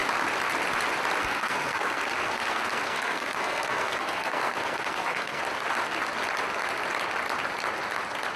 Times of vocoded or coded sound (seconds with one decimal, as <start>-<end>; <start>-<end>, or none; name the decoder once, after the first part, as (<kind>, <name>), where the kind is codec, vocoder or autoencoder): 1.2-5.4 (codec, SNAC)